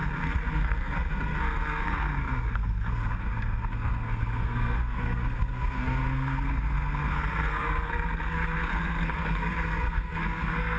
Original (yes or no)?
no